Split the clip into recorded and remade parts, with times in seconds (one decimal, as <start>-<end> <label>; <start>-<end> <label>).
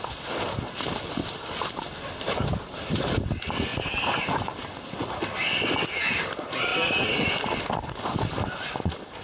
0.0-9.2 recorded